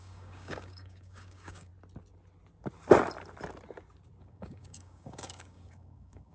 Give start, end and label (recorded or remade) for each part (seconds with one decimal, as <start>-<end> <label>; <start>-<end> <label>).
0.0-1.7 remade; 1.7-4.2 recorded; 4.2-6.3 remade

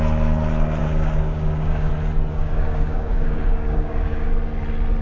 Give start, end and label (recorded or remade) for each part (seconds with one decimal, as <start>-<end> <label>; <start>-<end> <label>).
0.0-0.8 recorded; 0.8-1.9 remade; 1.9-2.3 recorded; 2.3-4.3 remade; 4.3-5.0 recorded